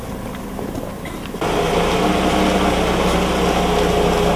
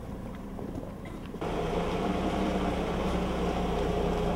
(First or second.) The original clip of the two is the first